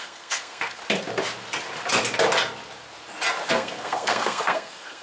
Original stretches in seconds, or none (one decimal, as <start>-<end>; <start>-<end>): 0.8-3.5